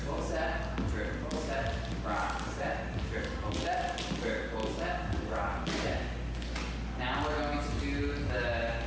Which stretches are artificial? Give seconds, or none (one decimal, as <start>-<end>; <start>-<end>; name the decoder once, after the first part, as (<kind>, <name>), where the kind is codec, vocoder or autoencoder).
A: none